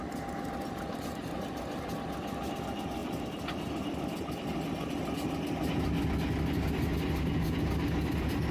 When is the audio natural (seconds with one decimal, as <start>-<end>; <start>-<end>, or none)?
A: 0.0-8.5